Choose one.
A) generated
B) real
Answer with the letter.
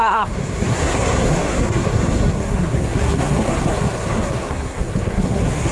A